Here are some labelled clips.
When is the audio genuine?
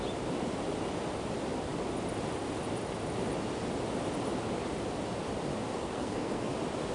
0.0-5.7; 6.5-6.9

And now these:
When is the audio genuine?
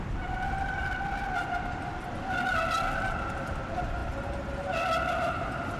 0.0-5.8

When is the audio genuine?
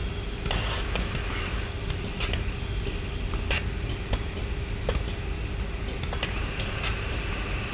0.0-7.7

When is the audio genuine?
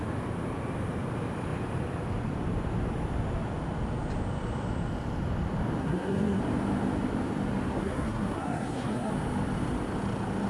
0.0-5.8; 6.4-7.7; 9.1-10.5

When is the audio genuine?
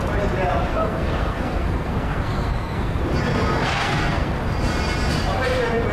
0.0-0.7; 3.0-3.6; 4.4-5.9